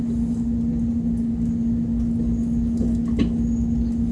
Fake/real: real